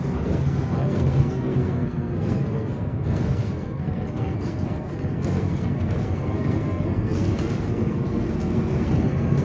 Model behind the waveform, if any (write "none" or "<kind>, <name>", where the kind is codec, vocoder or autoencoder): codec, SNAC